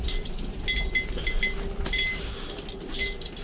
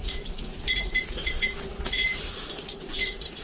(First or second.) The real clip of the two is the first